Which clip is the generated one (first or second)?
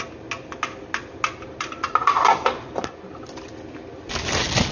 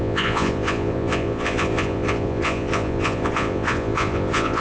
second